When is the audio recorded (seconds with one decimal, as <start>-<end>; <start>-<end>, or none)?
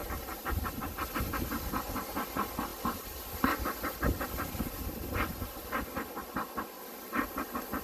0.9-7.8